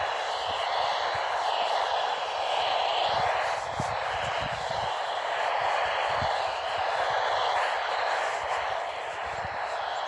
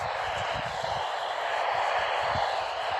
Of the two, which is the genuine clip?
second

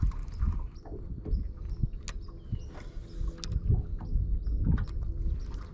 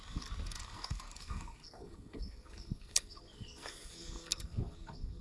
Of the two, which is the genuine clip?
first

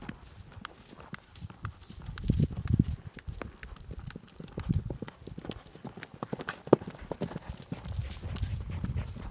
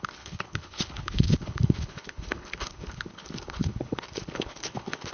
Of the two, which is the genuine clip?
first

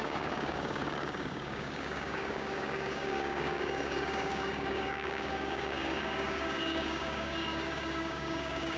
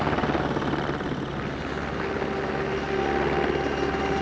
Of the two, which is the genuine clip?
second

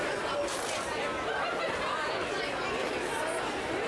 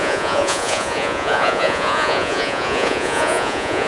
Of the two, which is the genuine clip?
first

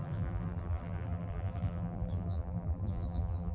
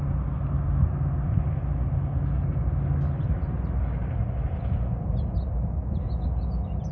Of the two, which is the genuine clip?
second